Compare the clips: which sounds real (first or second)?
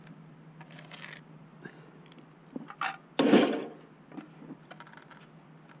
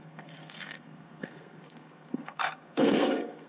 first